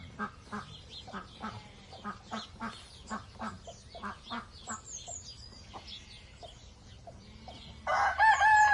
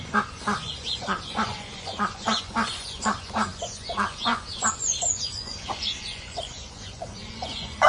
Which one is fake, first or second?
second